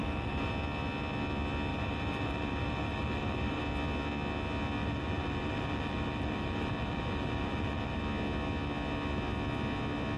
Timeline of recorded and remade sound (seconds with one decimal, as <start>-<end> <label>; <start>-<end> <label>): 0.0-0.5 remade; 0.5-1.7 recorded; 1.7-3.6 remade; 3.6-4.8 recorded; 4.8-8.0 remade; 8.0-10.2 recorded